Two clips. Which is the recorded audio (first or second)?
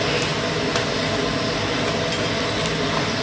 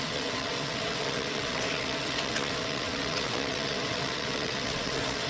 first